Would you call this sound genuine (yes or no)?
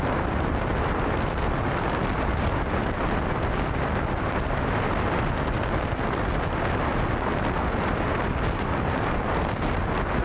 yes